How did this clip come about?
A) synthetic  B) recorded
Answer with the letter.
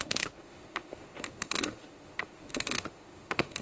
A